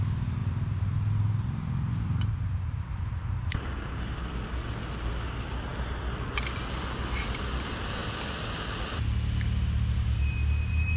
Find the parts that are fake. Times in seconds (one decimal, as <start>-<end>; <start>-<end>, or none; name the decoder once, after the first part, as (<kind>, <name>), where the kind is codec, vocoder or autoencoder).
0.4-2.9 (vocoder, BigVGAN v2)